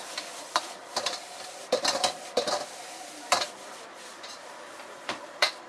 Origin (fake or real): fake